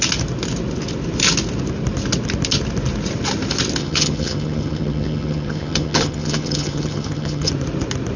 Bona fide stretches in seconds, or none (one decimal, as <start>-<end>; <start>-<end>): 0.0-3.8; 7.5-8.2